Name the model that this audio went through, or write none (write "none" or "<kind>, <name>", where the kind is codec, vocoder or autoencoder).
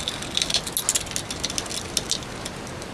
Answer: none